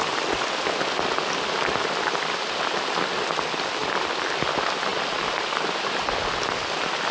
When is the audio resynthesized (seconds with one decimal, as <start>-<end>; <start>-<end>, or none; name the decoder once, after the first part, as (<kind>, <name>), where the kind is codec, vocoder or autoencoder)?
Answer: none